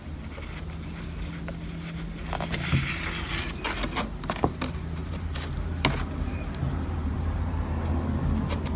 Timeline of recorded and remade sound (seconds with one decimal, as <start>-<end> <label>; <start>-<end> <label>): 0.0-5.0 recorded; 5.0-7.8 remade; 7.8-8.8 recorded